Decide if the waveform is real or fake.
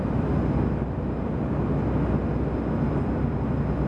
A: real